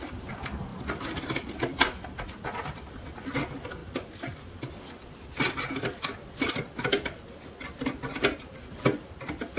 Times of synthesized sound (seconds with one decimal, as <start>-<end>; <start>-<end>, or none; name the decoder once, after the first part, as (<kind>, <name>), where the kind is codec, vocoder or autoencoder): none